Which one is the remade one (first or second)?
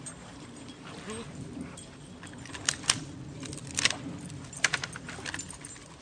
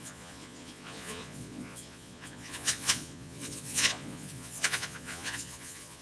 second